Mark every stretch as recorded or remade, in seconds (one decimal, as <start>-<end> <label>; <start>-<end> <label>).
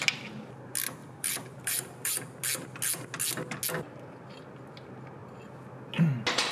0.0-1.0 recorded; 1.0-2.2 remade; 2.2-6.5 recorded